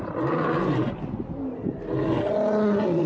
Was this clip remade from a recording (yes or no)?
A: no